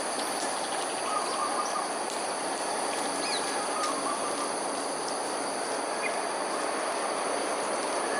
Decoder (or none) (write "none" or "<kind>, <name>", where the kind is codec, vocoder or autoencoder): none